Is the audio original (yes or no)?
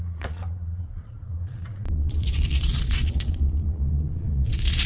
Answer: no